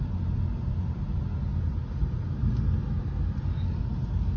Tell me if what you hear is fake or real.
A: real